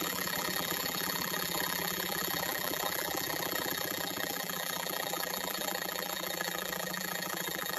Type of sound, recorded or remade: remade